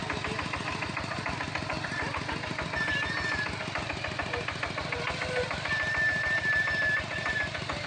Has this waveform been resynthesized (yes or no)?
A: no